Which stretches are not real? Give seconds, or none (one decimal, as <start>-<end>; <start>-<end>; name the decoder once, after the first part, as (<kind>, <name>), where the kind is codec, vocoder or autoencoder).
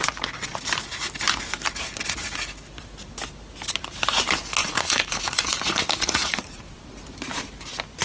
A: 4.6-6.6 (vocoder, Vocos)